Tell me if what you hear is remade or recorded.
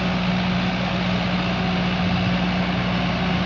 recorded